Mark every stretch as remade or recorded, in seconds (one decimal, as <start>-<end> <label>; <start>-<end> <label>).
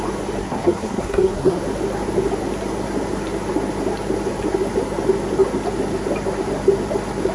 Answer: 0.0-0.4 recorded; 0.4-1.6 remade; 1.6-7.3 recorded